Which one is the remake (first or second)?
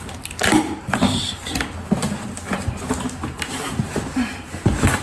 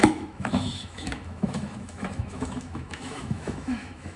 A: second